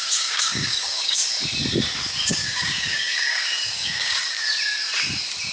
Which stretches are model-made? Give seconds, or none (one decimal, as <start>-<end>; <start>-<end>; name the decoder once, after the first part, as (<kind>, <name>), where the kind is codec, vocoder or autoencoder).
0.0-1.2 (codec, DAC); 2.3-4.2